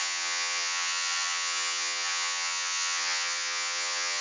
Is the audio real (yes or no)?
no